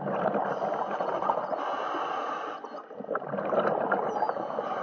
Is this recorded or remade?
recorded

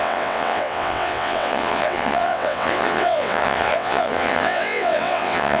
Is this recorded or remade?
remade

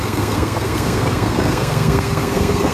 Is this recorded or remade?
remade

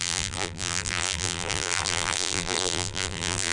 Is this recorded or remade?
remade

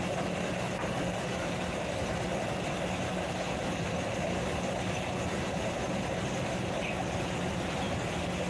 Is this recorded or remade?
recorded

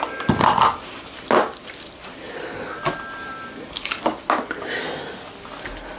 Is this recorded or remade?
recorded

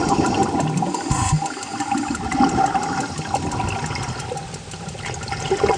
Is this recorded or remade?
recorded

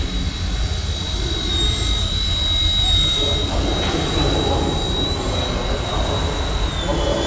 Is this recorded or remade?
recorded